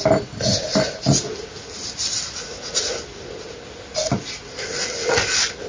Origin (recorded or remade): recorded